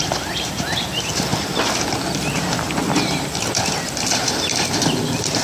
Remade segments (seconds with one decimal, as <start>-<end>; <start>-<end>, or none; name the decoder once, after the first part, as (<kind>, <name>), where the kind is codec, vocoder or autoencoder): none